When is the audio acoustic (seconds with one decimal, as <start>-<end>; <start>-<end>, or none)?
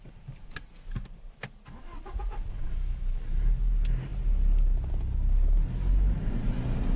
0.0-7.0